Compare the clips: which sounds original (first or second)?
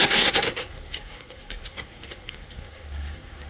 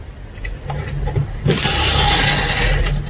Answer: second